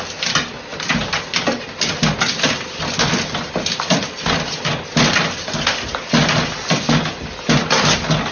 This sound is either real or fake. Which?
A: real